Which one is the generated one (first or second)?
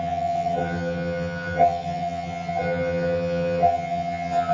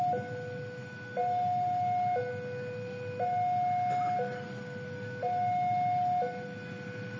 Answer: first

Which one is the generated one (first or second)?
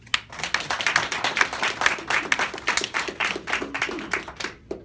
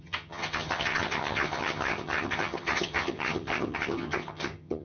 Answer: second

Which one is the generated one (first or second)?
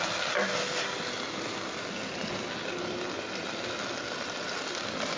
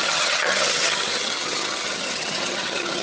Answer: second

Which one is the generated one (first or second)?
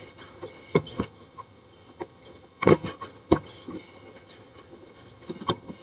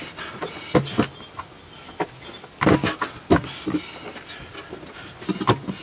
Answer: first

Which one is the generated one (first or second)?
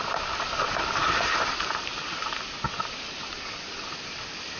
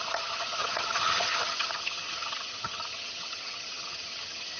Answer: second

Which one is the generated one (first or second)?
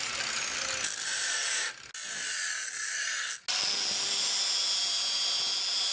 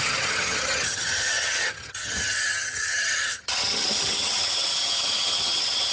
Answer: second